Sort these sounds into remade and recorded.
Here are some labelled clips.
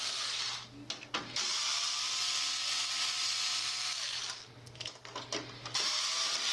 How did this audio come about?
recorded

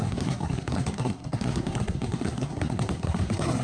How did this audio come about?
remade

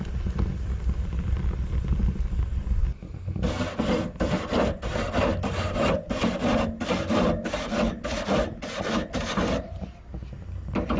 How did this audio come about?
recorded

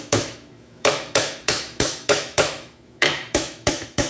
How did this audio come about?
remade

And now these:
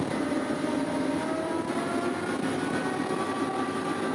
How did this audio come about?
recorded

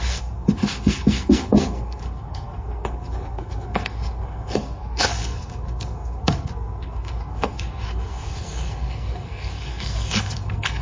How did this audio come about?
remade